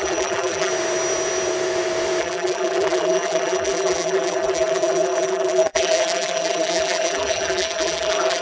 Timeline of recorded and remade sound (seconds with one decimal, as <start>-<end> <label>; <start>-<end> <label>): 0.0-0.7 remade; 0.7-2.2 recorded; 2.2-8.4 remade